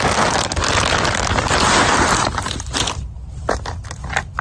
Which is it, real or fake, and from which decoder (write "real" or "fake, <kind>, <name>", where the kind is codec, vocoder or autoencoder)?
real